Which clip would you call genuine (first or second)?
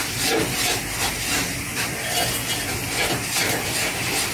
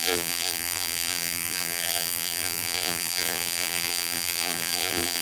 first